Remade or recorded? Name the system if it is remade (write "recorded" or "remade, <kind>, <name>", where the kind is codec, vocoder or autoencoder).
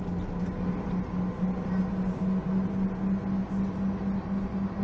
recorded